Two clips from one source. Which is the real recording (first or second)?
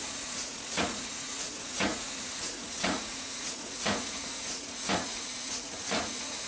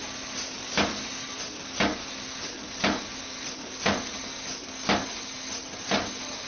second